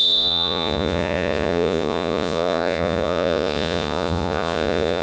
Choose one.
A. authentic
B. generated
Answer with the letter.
B